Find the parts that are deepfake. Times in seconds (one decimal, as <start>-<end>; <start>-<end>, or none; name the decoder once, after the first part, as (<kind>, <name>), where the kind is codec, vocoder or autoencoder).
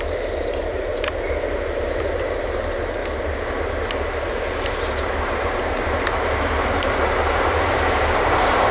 0.0-3.0 (vocoder, BigVGAN v2); 5.0-8.7